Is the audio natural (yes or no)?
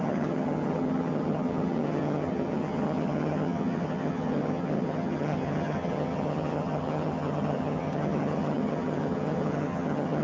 no